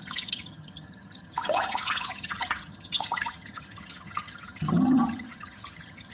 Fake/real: fake